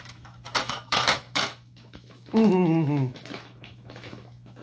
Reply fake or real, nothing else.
fake